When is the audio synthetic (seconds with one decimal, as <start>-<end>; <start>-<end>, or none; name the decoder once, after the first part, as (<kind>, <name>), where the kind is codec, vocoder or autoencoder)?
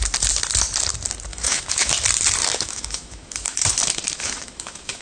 1.3-1.9 (autoencoder, DAC-VAE); 2.4-5.0